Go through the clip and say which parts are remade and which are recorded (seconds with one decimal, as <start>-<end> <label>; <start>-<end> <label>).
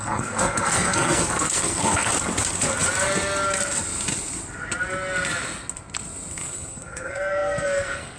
0.0-2.1 remade; 2.1-6.3 recorded; 6.3-8.2 remade